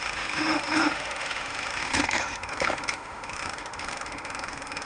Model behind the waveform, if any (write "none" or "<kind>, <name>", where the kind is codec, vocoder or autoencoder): autoencoder, DAC-VAE